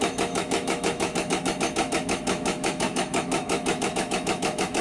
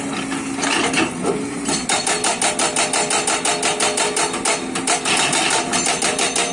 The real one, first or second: second